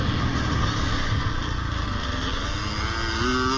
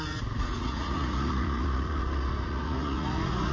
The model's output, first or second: second